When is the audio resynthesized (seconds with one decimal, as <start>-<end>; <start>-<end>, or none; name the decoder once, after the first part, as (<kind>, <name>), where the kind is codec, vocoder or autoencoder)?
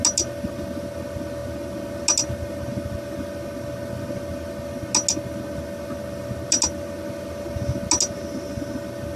none